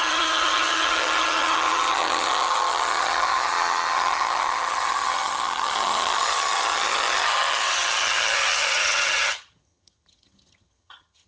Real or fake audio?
fake